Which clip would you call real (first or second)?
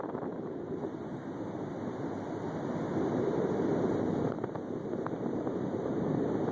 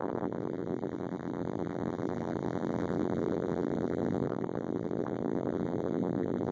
first